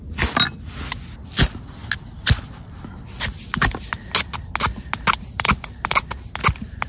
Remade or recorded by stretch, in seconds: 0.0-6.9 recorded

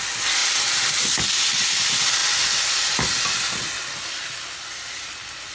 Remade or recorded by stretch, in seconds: 0.0-5.5 recorded

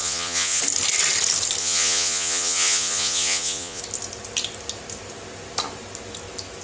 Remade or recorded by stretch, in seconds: 0.0-0.6 remade; 0.6-1.6 recorded; 1.6-3.8 remade; 3.8-6.6 recorded

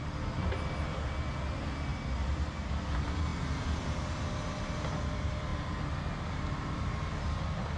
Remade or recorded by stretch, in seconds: 0.0-1.9 recorded; 1.9-2.7 remade; 2.7-7.8 recorded

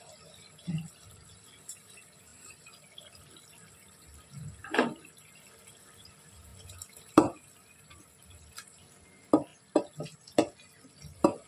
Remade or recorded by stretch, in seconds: 0.0-11.5 recorded

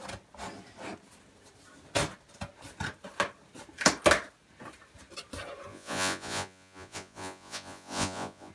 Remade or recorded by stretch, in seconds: 0.0-5.7 recorded; 5.7-8.5 remade